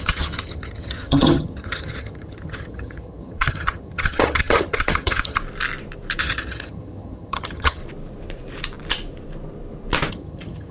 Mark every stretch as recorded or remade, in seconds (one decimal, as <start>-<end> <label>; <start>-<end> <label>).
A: 0.0-5.4 remade; 5.4-6.2 recorded; 6.2-7.8 remade; 7.8-10.1 recorded; 10.1-10.7 remade